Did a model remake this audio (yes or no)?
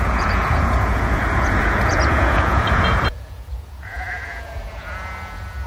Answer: yes